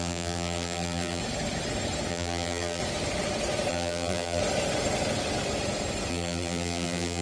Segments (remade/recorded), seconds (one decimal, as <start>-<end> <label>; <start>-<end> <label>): 0.0-1.2 remade; 1.2-2.1 recorded; 2.1-2.8 remade; 2.8-3.7 recorded; 3.7-4.4 remade; 4.4-6.1 recorded; 6.1-7.2 remade